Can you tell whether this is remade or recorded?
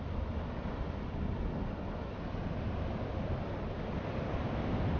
recorded